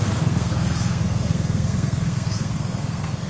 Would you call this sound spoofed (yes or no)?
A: yes